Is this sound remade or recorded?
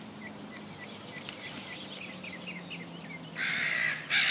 recorded